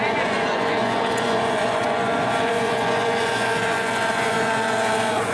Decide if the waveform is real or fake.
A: fake